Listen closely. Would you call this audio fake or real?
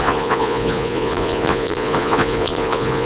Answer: fake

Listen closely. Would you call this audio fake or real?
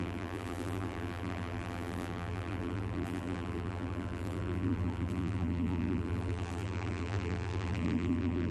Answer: fake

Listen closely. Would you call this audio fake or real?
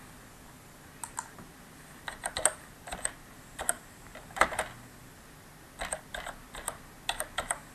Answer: real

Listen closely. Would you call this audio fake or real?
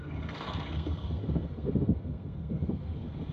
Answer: fake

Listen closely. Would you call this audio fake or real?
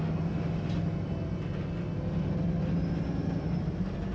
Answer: real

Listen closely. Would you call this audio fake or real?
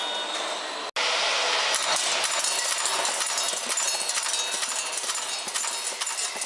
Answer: real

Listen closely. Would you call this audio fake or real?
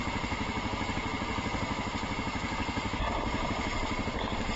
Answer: real